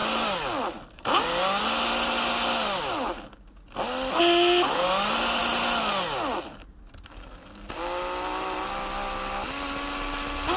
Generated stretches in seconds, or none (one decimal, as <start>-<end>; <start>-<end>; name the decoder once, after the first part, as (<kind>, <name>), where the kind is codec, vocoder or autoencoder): none